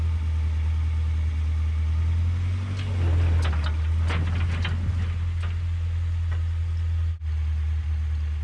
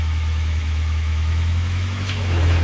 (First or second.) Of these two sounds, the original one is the first